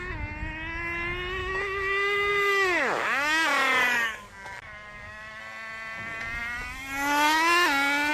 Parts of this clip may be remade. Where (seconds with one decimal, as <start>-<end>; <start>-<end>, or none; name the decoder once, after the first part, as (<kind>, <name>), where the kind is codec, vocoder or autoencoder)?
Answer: 1.4-5.4 (codec, DAC)